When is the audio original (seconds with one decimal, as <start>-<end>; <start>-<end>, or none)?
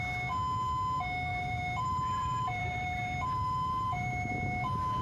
0.0-1.3; 4.3-5.0